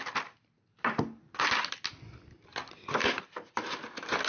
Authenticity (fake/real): real